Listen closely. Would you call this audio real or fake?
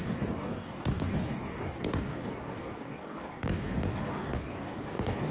fake